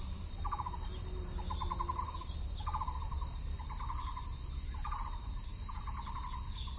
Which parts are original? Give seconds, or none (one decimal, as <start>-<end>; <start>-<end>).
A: 0.0-6.8